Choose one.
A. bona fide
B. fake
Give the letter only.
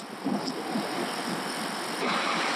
A